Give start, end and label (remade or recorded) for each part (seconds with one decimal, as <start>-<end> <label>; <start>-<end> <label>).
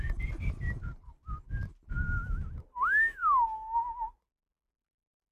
0.0-5.3 recorded